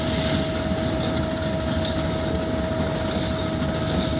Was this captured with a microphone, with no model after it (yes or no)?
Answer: yes